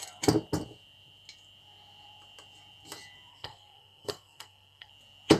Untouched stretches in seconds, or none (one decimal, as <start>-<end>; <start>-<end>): 0.0-3.3; 4.9-5.4